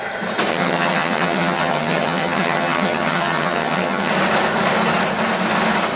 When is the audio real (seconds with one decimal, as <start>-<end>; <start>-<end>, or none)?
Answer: 0.0-0.5; 4.1-6.0